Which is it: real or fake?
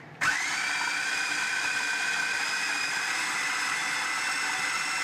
real